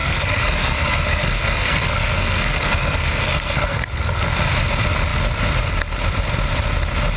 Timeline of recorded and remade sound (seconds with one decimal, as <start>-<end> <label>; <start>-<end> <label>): 0.0-4.3 remade; 4.3-7.2 recorded